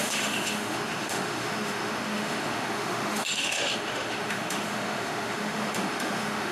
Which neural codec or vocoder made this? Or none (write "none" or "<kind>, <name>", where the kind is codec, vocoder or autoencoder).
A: autoencoder, DAC-VAE